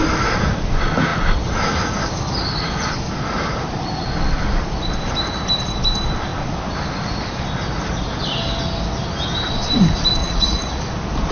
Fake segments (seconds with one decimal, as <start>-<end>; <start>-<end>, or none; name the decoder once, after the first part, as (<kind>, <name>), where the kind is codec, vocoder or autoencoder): 10.2-10.8 (vocoder, Vocos)